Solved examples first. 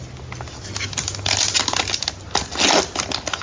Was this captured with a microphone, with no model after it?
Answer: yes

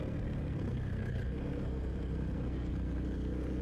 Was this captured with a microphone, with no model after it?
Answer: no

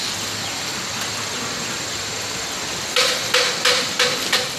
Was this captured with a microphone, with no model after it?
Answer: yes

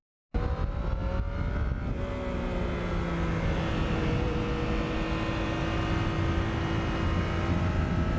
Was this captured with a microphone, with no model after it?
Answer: yes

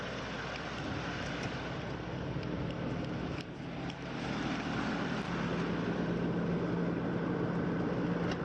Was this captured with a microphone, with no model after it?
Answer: yes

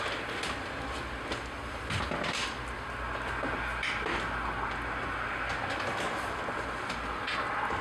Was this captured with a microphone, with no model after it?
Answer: yes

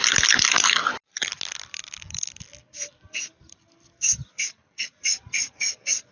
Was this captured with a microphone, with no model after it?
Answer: yes